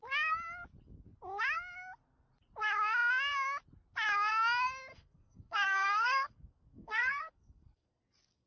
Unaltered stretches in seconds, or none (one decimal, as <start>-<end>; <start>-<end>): 0.0-4.9; 8.0-8.5